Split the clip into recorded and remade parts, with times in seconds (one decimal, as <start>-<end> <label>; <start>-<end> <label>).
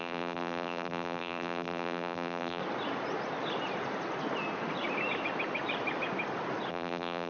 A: 0.0-2.6 remade; 2.6-6.7 recorded; 6.7-7.3 remade